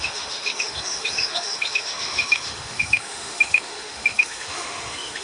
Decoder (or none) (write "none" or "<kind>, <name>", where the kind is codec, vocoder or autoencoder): autoencoder, DAC-VAE